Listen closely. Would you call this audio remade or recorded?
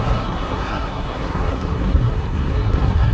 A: remade